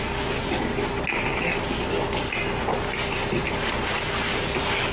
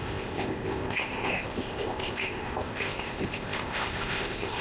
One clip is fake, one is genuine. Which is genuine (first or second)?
first